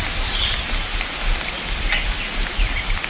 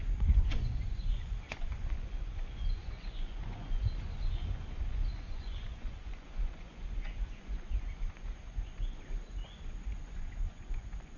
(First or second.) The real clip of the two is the first